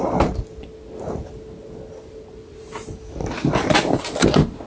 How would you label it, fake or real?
real